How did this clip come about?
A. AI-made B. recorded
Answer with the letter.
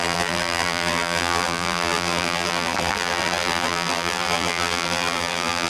A